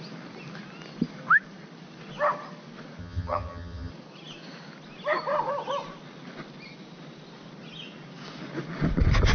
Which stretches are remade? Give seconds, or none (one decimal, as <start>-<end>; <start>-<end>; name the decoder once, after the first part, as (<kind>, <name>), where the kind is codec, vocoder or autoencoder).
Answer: 3.0-3.9 (vocoder, HiFi-GAN)